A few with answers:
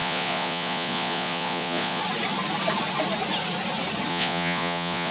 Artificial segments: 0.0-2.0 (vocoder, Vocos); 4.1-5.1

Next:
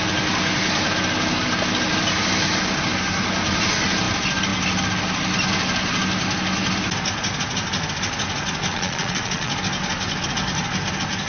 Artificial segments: 8.7-9.5 (vocoder, Vocos)

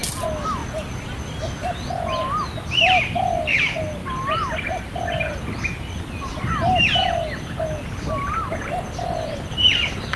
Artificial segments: none

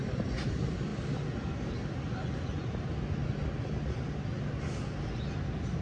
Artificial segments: none